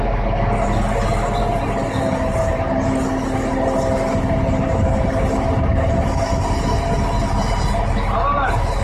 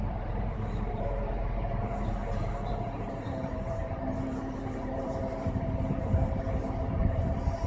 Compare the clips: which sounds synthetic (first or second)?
second